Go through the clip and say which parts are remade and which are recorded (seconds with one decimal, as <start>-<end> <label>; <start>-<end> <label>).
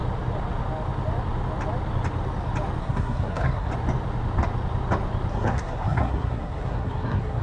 0.0-2.8 recorded; 2.8-3.7 remade; 3.7-5.3 recorded; 5.3-7.4 remade